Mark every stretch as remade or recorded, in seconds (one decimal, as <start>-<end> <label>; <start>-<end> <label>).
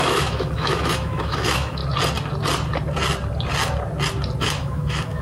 0.0-1.8 remade; 1.8-4.4 recorded; 4.4-5.2 remade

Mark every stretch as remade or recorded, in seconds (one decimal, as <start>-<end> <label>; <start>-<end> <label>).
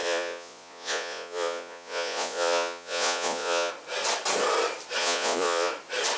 0.0-3.7 remade; 3.7-5.0 recorded; 5.0-5.7 remade; 5.7-6.2 recorded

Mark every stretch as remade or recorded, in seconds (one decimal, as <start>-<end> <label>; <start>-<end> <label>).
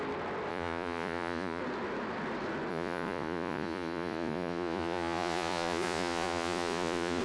0.0-0.5 recorded; 0.5-1.6 remade; 1.6-2.7 recorded; 2.7-7.2 remade